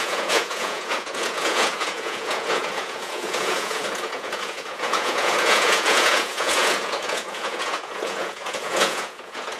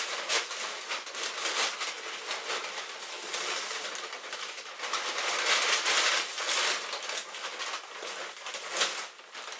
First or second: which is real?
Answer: second